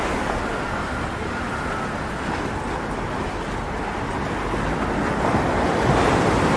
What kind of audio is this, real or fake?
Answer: real